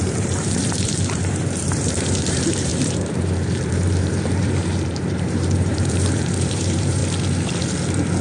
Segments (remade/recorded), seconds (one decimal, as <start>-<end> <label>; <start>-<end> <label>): 0.0-7.0 remade; 7.0-8.2 recorded